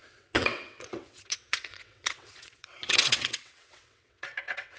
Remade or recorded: remade